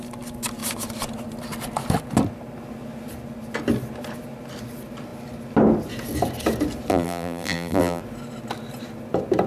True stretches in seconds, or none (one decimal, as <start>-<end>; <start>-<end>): 0.0-6.9; 8.0-9.5